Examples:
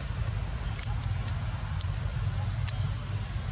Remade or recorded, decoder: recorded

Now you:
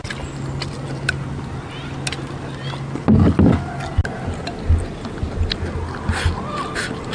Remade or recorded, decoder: recorded